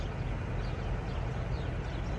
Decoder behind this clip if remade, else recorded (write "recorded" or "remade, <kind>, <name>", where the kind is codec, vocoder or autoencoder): recorded